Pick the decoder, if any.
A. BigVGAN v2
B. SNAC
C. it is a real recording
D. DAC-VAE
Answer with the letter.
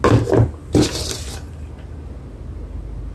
C